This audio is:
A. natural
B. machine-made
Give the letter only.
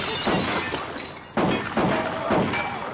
A